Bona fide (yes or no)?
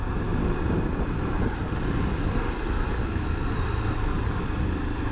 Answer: yes